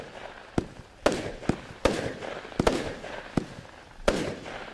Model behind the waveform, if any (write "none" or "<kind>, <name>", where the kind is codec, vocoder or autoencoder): none